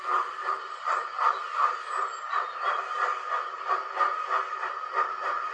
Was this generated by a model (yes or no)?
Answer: no